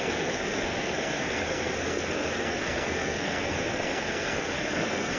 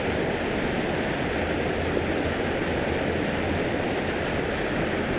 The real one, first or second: second